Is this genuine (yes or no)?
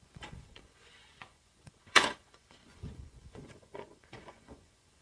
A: no